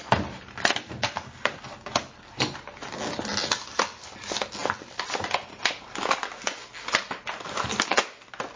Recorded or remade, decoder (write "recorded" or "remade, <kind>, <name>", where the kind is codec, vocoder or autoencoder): recorded